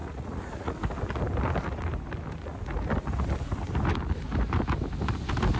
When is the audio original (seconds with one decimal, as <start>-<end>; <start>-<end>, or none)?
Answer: 0.8-5.6